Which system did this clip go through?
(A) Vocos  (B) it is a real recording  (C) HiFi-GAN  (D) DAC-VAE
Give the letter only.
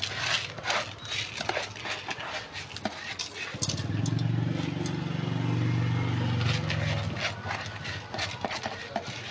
B